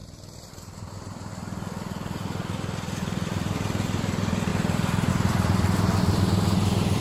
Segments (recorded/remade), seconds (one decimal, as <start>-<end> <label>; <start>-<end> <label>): 0.0-1.3 remade; 1.3-7.0 recorded